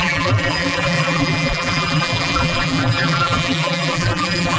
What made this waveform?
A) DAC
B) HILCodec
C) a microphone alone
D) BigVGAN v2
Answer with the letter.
D